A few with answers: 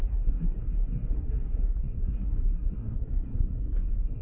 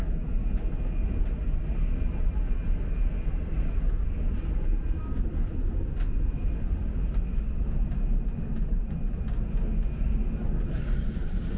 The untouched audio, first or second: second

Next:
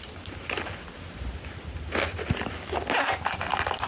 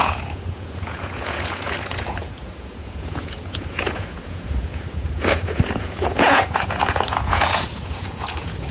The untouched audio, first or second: first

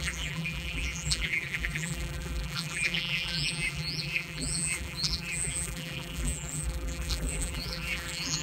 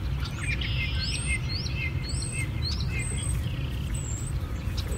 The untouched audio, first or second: second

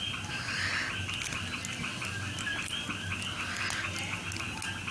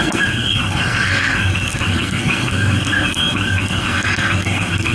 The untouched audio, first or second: first